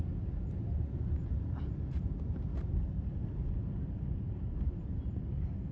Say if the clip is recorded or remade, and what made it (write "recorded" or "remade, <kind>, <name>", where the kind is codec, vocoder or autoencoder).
recorded